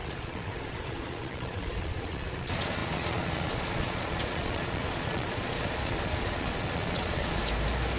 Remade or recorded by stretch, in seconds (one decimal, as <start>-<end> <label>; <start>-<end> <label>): 0.0-7.4 remade; 7.4-8.0 recorded